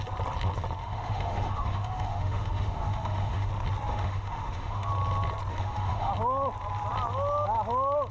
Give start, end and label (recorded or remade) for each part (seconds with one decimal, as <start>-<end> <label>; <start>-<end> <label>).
0.0-0.8 recorded; 0.8-3.5 remade; 3.5-3.9 recorded; 3.9-4.9 remade; 4.9-5.5 recorded; 5.5-6.1 remade; 6.1-8.1 recorded